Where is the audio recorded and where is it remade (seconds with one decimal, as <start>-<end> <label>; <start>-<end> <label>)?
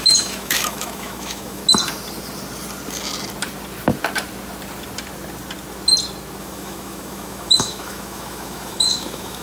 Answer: 0.0-1.6 remade; 1.6-6.4 recorded; 6.4-9.4 remade